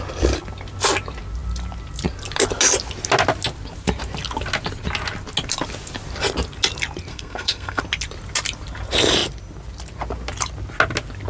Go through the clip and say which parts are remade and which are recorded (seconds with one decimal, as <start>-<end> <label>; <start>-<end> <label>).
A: 0.0-7.1 recorded; 7.1-7.8 remade; 7.8-11.3 recorded

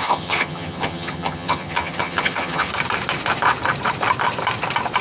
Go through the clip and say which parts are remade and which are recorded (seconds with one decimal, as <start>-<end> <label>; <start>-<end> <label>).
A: 0.0-2.7 remade; 2.7-5.0 recorded

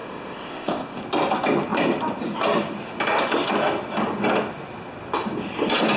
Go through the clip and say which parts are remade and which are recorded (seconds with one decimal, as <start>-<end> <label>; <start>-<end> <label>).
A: 0.0-1.0 remade; 1.0-6.0 recorded

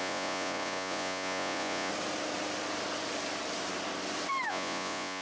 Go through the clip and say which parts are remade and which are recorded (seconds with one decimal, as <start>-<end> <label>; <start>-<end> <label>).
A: 0.0-1.9 remade; 1.9-4.5 recorded; 4.5-5.2 remade

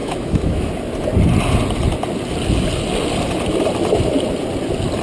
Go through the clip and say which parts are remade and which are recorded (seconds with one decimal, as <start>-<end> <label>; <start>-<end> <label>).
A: 0.0-0.7 remade; 0.7-5.0 recorded

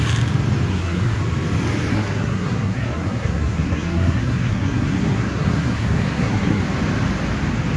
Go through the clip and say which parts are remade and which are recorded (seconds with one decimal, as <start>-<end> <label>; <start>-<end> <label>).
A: 0.0-0.7 recorded; 0.7-1.2 remade; 1.2-1.9 recorded; 1.9-6.6 remade; 6.6-7.8 recorded